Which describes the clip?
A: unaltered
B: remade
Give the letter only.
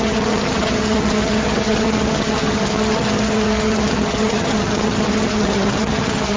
B